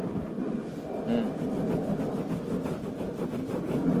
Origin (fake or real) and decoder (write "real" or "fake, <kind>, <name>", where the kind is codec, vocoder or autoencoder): fake, vocoder, BigVGAN v2